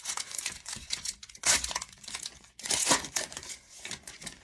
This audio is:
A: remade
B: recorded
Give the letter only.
A